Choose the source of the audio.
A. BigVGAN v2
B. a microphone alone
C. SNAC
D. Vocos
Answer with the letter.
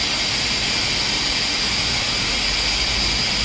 B